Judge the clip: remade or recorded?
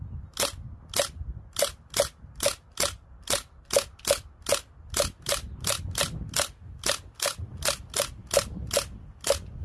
recorded